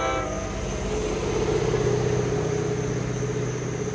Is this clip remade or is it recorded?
recorded